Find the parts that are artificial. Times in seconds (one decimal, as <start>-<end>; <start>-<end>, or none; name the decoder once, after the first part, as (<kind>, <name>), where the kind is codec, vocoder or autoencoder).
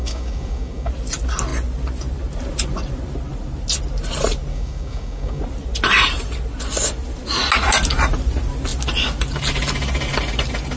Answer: 0.0-0.9 (codec, DAC); 4.5-5.4